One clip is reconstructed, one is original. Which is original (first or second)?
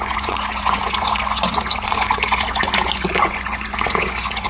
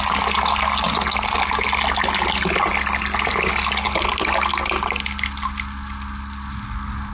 second